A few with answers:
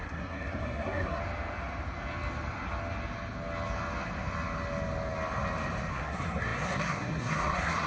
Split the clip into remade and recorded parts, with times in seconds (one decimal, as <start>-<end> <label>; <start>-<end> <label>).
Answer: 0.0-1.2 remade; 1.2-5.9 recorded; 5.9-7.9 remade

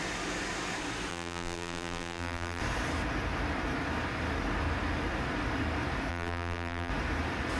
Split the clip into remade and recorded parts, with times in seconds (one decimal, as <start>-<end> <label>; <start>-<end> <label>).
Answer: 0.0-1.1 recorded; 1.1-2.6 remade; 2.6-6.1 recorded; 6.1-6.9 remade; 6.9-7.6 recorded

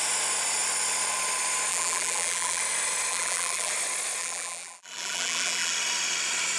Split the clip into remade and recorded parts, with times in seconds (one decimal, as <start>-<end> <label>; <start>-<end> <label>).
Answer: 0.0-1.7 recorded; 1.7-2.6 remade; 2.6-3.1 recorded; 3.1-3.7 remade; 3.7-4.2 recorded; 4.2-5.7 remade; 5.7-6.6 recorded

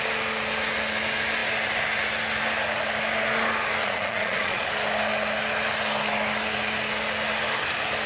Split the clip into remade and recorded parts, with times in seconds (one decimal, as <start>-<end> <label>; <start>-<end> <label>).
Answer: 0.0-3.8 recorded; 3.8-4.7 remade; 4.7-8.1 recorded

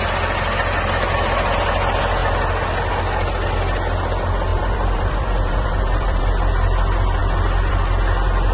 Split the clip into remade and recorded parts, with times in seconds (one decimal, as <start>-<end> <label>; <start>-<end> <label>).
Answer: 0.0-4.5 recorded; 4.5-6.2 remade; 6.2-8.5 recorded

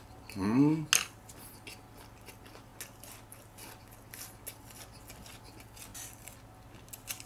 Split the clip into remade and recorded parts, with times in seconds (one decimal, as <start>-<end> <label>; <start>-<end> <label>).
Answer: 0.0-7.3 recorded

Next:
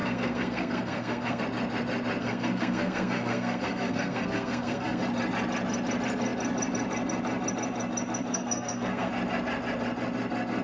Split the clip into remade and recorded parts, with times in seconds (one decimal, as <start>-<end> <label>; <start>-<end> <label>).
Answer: 0.0-1.4 remade; 1.4-2.2 recorded; 2.2-5.0 remade; 5.0-8.3 recorded; 8.3-9.1 remade; 9.1-10.6 recorded

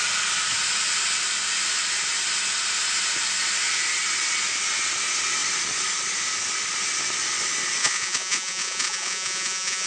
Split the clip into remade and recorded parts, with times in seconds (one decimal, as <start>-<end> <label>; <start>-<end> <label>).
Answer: 0.0-7.8 recorded; 7.8-9.9 remade